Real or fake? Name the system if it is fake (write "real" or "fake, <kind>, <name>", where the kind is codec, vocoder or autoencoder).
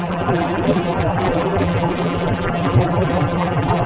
fake, vocoder, BigVGAN v2